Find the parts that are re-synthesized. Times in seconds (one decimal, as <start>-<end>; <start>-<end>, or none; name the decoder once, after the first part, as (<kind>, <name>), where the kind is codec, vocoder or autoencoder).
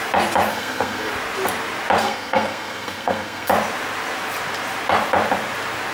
0.5-1.1 (codec, SNAC); 2.0-3.5